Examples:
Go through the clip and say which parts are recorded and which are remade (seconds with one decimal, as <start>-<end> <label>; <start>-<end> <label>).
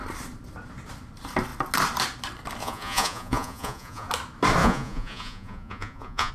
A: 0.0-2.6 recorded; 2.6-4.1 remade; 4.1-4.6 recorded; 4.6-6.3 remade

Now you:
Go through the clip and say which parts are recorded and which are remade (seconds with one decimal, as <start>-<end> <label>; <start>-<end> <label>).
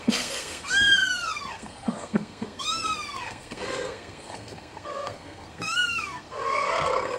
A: 0.0-7.2 remade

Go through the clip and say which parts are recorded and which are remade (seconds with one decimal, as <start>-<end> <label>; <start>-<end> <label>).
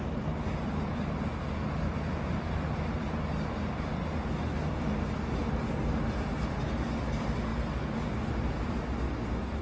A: 0.0-9.6 recorded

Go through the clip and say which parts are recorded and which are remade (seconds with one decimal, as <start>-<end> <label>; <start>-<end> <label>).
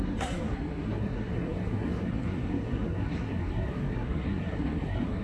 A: 0.0-5.2 remade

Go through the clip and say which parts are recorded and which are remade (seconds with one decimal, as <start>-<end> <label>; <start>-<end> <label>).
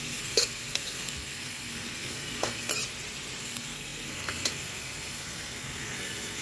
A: 0.0-2.7 remade; 2.7-3.4 recorded; 3.4-6.4 remade